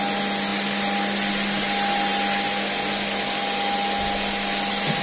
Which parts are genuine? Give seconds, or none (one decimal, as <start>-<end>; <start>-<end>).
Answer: 0.0-5.0